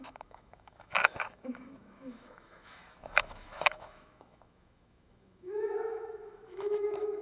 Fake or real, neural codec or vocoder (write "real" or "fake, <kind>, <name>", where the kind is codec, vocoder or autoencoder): fake, autoencoder, DAC-VAE